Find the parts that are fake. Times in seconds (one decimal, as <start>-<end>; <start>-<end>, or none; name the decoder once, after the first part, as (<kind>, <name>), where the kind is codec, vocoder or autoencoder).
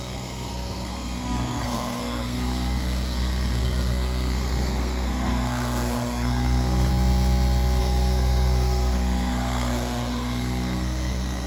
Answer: 0.0-6.9 (codec, SNAC); 7.8-11.5